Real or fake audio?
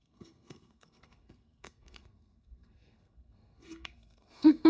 fake